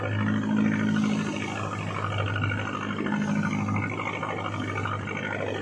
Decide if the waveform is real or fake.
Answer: real